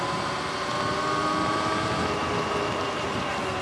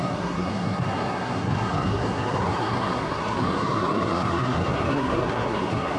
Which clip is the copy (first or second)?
second